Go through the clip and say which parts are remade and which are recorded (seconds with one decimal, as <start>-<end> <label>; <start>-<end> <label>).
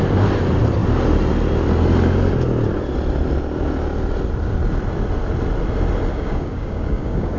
0.0-6.1 recorded; 6.1-7.4 remade